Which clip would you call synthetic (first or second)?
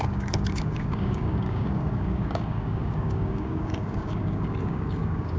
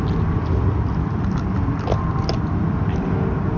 first